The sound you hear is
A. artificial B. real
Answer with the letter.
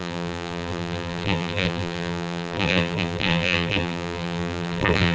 A